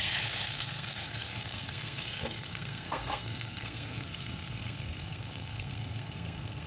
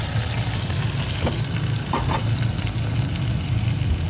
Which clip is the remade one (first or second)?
first